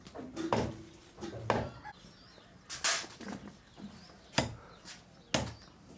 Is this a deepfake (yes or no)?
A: no